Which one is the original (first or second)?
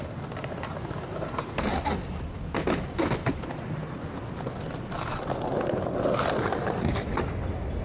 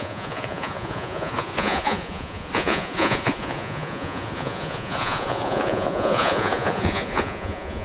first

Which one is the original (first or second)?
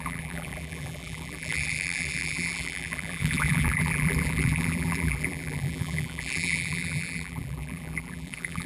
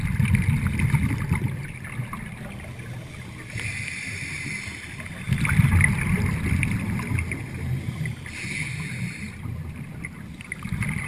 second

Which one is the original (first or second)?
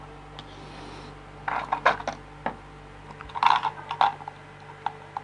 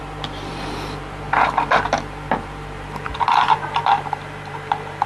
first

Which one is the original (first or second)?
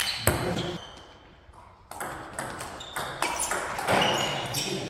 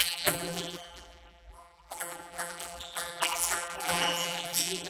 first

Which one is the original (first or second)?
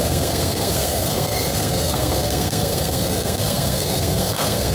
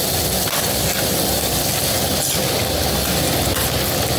second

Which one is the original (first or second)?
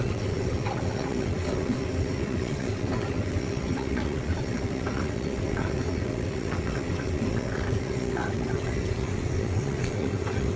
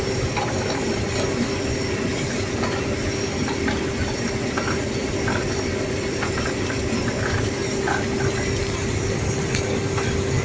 second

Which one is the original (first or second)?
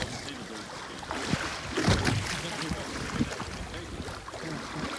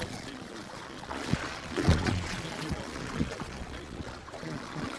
first